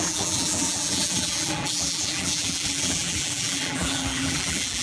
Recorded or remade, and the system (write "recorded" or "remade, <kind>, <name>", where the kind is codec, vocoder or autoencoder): remade, vocoder, BigVGAN v2